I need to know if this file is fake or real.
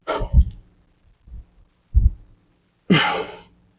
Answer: real